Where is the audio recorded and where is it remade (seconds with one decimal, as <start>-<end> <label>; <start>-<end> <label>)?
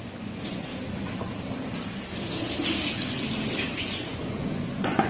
0.0-0.7 remade; 0.7-3.8 recorded; 3.8-5.1 remade